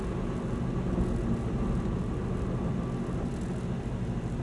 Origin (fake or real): real